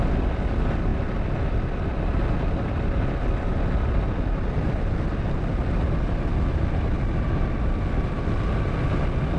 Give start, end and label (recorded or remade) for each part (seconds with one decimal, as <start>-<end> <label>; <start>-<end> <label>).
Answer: 0.0-9.4 recorded